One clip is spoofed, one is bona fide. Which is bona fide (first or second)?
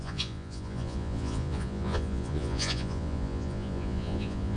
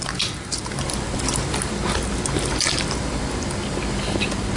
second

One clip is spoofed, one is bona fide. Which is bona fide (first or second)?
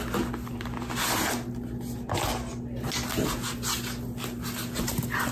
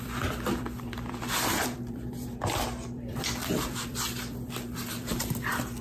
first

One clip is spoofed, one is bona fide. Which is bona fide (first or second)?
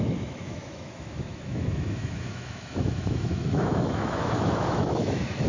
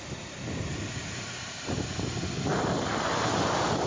second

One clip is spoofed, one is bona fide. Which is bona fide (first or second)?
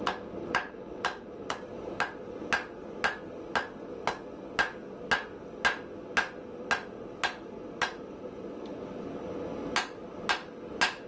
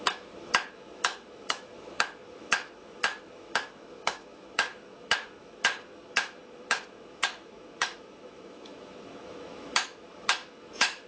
first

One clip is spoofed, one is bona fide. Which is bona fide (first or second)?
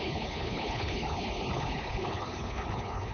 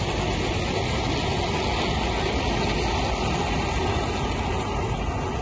second